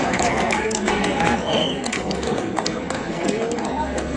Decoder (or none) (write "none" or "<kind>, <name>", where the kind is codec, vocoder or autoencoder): codec, SNAC